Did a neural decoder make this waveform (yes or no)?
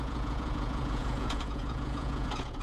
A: yes